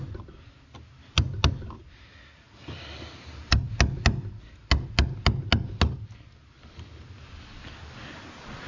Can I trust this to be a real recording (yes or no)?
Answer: yes